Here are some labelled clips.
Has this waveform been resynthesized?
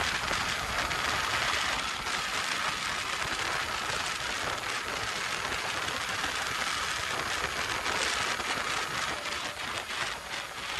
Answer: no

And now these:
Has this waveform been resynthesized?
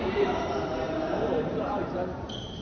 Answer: yes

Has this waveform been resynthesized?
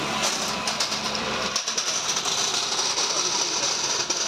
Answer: yes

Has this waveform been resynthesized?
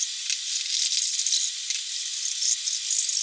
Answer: no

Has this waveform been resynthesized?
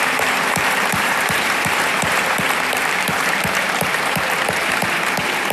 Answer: yes